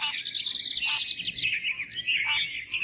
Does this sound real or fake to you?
real